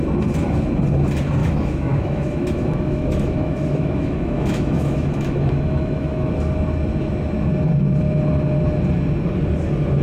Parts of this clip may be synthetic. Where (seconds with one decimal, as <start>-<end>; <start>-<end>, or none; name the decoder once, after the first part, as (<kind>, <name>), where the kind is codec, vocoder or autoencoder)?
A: 1.4-6.3 (autoencoder, DAC-VAE)